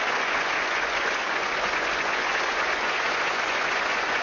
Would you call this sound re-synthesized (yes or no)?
yes